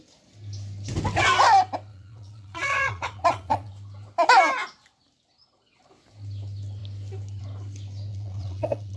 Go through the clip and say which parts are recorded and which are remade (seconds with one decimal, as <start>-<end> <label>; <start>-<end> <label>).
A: 0.0-1.9 recorded; 1.9-3.7 remade; 3.7-8.1 recorded; 8.1-9.0 remade